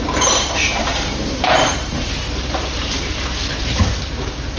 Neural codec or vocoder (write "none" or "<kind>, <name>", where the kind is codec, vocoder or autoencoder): vocoder, BigVGAN v2